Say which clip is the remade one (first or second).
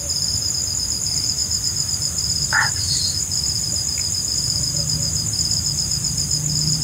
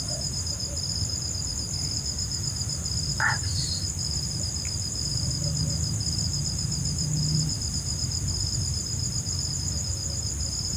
second